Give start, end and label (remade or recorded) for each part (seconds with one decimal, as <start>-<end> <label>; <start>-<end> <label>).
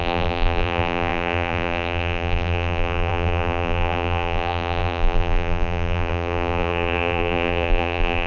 0.0-8.3 remade